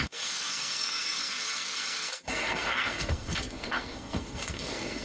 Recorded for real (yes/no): no